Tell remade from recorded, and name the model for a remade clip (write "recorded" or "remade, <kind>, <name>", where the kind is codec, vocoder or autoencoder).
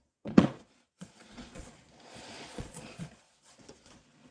remade, vocoder, Vocos